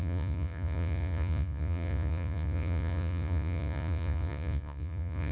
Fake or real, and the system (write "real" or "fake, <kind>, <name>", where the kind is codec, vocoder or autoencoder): fake, vocoder, Vocos